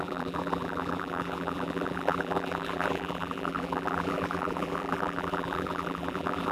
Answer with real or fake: fake